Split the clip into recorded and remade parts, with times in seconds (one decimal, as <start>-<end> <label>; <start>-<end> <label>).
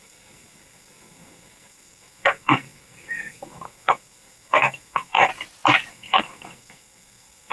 0.0-5.3 remade; 5.3-5.9 recorded; 5.9-7.5 remade